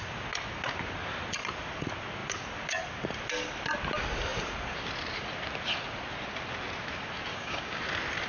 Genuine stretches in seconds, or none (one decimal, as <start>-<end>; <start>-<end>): 0.0-7.3; 7.8-8.3

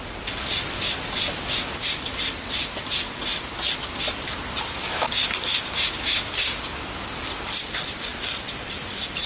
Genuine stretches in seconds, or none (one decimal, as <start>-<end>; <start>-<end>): 0.0-4.8; 6.6-9.3

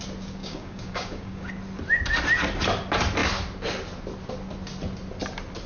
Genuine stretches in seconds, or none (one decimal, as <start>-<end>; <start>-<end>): 0.0-0.4; 1.5-5.7

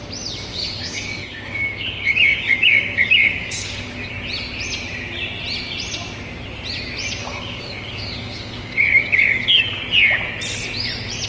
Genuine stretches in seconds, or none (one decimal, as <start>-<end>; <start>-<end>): 0.0-0.5; 4.1-7.2; 9.8-11.3

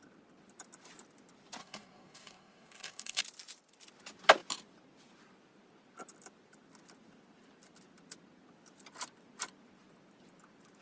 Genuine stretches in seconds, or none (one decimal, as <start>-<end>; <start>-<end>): 0.0-1.6; 3.2-10.8

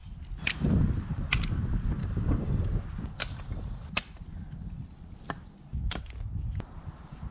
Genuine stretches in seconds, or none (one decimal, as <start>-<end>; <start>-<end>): 0.0-2.0; 2.6-7.3